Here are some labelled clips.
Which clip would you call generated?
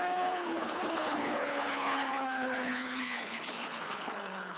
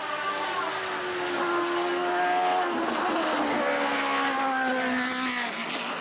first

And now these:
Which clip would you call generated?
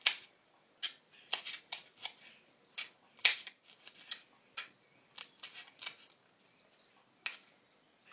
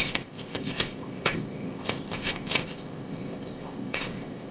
second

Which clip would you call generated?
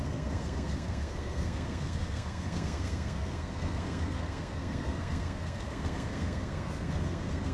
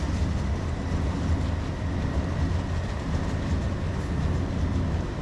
first